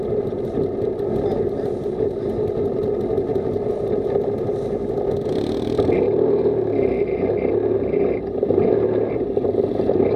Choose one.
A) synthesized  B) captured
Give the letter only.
B